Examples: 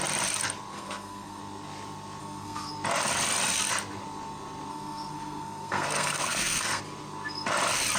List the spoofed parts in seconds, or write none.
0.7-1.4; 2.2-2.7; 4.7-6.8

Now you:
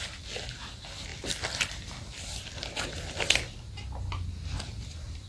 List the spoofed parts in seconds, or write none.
none

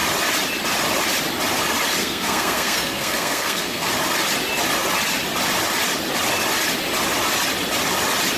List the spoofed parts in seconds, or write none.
2.0-3.9

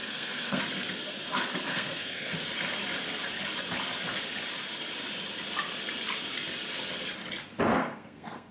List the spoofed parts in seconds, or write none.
0.0-0.6; 1.7-2.3; 7.7-8.5

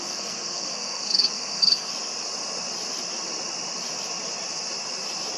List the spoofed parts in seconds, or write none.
0.0-1.9